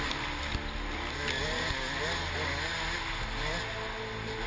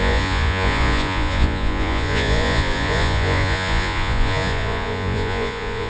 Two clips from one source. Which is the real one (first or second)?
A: first